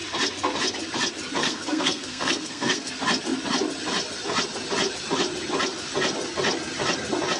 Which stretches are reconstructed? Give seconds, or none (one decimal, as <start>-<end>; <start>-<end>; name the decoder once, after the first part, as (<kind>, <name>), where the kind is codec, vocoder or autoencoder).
1.4-2.9 (codec, SNAC)